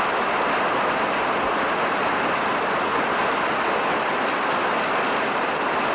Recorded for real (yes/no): yes